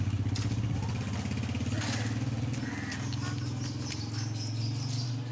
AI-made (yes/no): no